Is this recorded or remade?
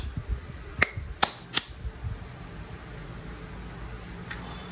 recorded